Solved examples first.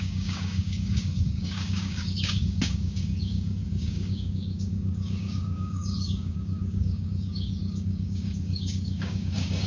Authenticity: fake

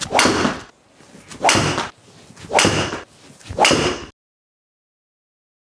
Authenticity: real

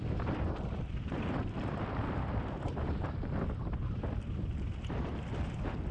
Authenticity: fake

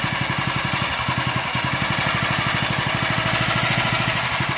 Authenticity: real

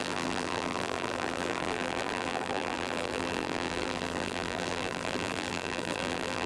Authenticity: fake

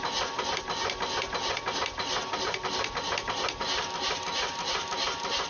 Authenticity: real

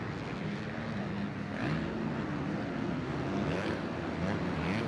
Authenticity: real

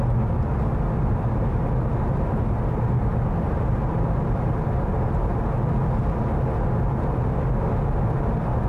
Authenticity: real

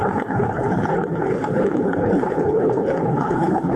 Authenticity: fake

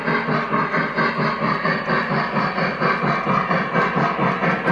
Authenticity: real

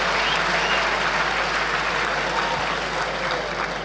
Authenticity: real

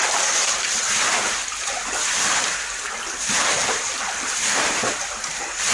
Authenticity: fake